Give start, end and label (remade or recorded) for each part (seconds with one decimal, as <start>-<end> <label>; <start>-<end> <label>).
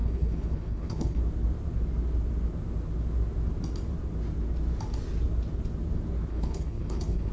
0.0-1.2 remade; 1.2-6.3 recorded; 6.3-7.3 remade